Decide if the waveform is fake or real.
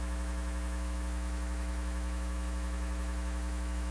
fake